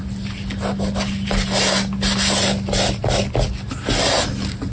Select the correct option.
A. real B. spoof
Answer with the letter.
A